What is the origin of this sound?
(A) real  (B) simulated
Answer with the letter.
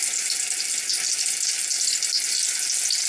A